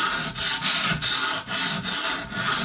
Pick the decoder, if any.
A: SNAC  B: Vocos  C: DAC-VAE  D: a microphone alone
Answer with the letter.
D